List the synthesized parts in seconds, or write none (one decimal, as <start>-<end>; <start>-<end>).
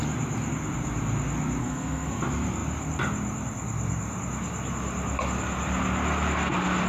1.6-2.2